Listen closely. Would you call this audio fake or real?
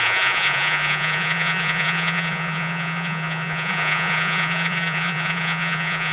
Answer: fake